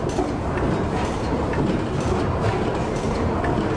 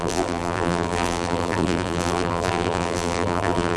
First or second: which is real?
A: first